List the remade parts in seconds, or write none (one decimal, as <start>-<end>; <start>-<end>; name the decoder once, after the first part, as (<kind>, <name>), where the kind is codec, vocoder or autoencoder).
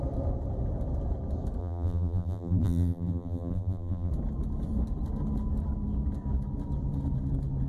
1.6-4.1 (vocoder, BigVGAN v2)